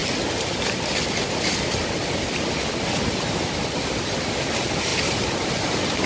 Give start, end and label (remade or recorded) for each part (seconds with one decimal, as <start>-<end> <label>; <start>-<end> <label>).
0.0-6.1 recorded